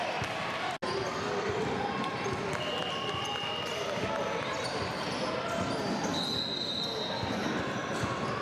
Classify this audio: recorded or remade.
recorded